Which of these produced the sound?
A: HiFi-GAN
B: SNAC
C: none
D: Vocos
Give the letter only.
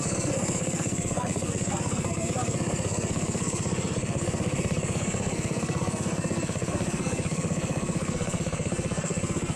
B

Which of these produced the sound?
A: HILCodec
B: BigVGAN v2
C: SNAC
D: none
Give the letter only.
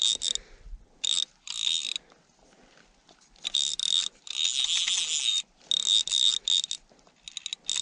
D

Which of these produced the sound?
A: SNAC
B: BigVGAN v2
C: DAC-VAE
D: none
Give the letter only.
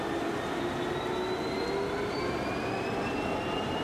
D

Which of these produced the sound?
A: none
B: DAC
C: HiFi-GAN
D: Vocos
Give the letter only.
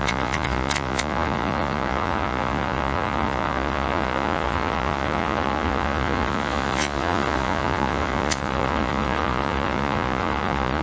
D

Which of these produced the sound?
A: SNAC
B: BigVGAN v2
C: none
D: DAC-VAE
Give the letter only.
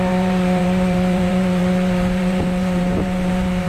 B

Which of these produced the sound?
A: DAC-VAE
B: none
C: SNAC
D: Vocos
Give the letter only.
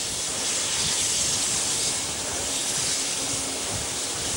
B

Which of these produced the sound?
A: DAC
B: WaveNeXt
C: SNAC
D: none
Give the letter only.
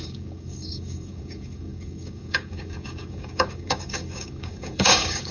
A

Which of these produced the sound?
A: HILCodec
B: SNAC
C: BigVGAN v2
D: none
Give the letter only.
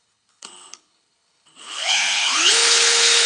A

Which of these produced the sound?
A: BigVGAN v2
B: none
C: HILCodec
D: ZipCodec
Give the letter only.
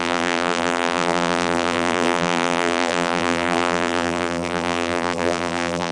A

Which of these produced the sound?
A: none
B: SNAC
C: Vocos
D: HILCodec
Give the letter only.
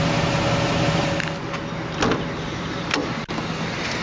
A